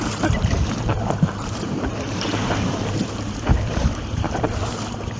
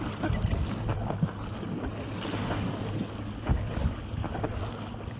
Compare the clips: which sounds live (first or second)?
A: second